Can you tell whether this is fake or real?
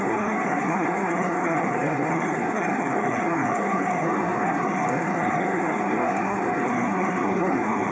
fake